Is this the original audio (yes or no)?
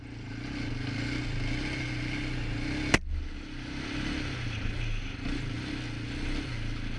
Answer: yes